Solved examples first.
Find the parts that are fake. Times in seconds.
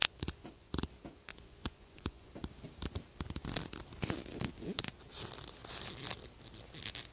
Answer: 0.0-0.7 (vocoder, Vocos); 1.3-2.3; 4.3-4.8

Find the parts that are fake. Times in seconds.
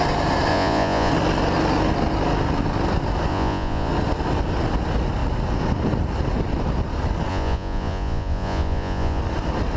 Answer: 0.5-1.1 (vocoder, Vocos); 3.3-3.9; 7.3-9.2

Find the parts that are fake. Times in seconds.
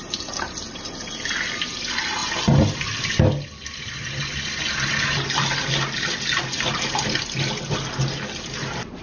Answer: none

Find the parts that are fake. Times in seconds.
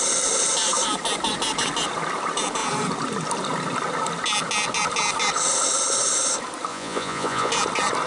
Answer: 6.7-7.5 (vocoder, Vocos)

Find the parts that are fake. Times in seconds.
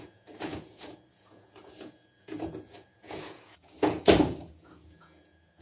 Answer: 0.0-5.6 (vocoder, Vocos)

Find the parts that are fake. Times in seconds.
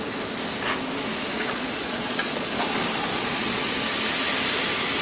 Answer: 1.3-2.5 (vocoder, Vocos); 3.1-3.7